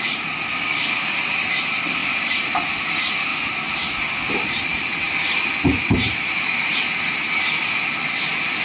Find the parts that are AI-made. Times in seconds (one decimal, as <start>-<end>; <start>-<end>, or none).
2.0-2.8; 3.3-7.4